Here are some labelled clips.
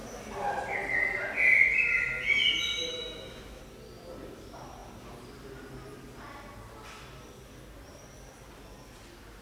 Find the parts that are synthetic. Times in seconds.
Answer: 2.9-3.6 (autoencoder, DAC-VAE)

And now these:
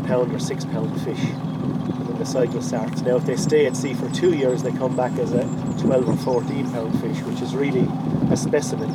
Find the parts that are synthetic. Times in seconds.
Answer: 4.9-5.6 (autoencoder, DAC-VAE); 7.1-8.2

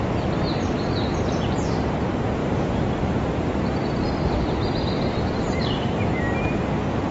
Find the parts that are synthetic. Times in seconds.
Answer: 2.4-6.2 (vocoder, BigVGAN v2)

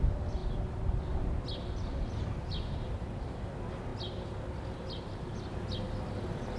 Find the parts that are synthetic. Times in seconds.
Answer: none

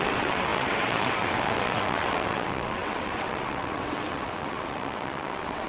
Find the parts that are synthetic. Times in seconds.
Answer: 0.0-5.7 (vocoder, WaveNeXt)

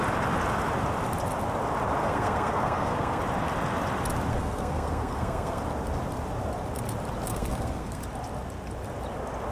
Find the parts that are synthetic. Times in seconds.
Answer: 2.0-3.2 (codec, SNAC); 4.3-5.6; 7.3-8.0

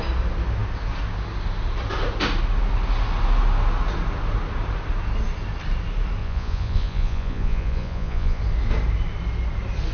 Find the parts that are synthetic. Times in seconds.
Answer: 6.2-8.4 (vocoder, Vocos)